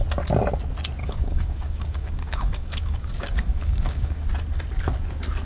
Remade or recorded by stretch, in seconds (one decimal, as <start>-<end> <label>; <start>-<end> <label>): 0.0-1.0 recorded; 1.0-4.3 remade; 4.3-5.5 recorded

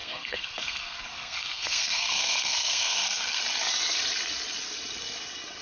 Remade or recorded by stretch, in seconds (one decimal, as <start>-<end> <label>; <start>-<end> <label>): 0.0-3.4 remade; 3.4-5.6 recorded

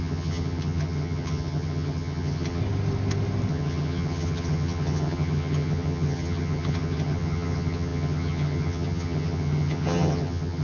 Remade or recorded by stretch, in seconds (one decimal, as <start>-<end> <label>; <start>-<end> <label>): 0.0-2.6 remade; 2.6-3.5 recorded; 3.5-10.6 remade

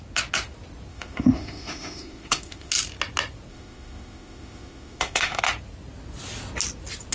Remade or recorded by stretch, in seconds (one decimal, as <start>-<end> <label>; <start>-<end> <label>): 0.0-0.9 recorded; 0.9-2.7 remade; 2.7-3.5 recorded; 3.5-5.4 remade; 5.4-7.1 recorded

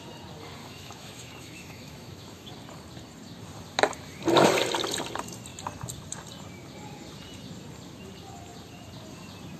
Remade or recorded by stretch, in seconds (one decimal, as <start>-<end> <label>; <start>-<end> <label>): 0.0-0.6 recorded; 0.6-2.5 remade; 2.5-9.6 recorded

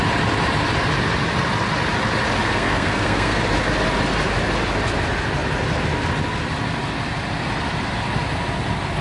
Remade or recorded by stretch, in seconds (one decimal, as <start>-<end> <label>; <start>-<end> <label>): 0.0-2.4 recorded; 2.4-3.4 remade; 3.4-9.0 recorded